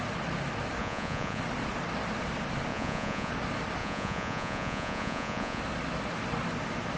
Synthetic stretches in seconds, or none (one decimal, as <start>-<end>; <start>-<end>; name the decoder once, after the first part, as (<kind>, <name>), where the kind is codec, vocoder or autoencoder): 0.8-1.4 (vocoder, Vocos); 2.7-3.3; 3.8-5.6